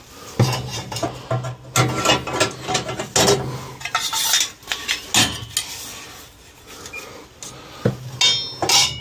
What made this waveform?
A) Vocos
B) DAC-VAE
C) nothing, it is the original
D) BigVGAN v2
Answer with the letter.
C